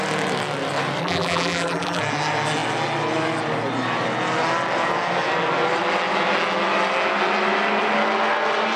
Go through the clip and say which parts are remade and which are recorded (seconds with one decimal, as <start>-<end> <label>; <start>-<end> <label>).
0.0-1.0 recorded; 1.0-2.0 remade; 2.0-8.8 recorded